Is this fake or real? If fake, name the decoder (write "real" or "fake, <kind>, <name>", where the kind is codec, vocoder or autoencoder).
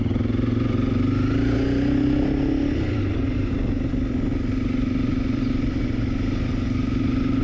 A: real